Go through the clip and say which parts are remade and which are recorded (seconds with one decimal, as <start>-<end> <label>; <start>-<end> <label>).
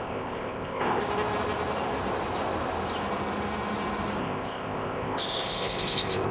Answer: 0.0-1.0 remade; 1.0-4.2 recorded; 4.2-6.3 remade